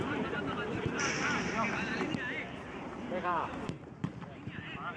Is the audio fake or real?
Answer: fake